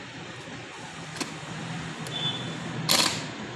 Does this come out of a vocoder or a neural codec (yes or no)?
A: no